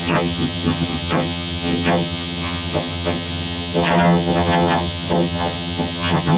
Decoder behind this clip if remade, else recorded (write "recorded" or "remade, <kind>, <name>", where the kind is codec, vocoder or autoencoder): remade, vocoder, HiFi-GAN